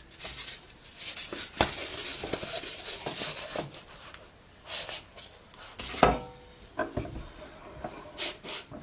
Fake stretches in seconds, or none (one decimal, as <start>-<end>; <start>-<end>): none